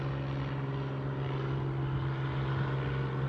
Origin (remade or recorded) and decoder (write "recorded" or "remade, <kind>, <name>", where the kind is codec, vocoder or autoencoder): recorded